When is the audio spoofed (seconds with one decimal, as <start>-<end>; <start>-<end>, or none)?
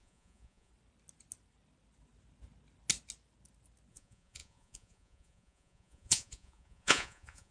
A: 0.0-0.7; 3.9-7.5